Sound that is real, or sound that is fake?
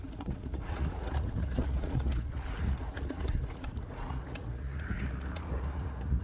fake